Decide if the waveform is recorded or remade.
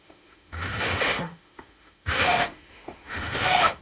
remade